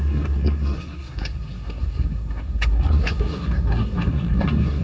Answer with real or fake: fake